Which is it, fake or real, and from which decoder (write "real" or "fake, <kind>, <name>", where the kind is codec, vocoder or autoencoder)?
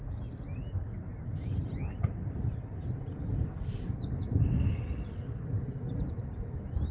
real